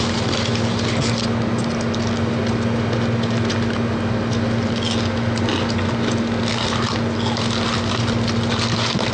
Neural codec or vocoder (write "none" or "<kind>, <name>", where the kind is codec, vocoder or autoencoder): none